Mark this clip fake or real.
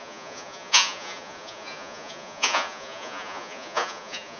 fake